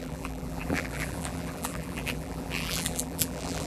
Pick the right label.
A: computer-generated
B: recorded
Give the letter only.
A